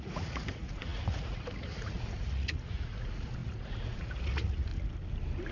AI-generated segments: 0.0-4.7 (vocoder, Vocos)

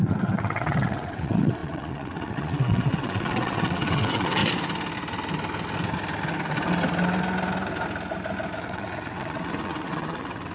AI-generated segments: 0.0-4.4 (vocoder, WaveNeXt); 8.6-10.5